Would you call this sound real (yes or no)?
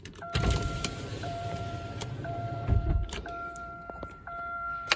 no